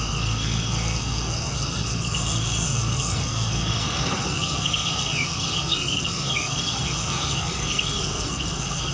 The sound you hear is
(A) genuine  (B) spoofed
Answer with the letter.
B